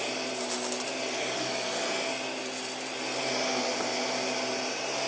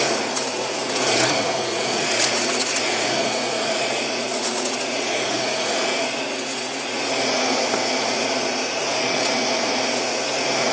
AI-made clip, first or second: second